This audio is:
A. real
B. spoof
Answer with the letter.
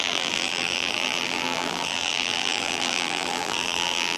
B